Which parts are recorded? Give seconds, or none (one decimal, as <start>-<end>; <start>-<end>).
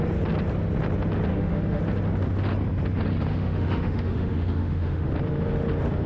0.0-1.3; 1.8-3.3; 5.1-6.1